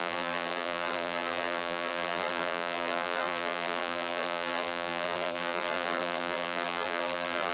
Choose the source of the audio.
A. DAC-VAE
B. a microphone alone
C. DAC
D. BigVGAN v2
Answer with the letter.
D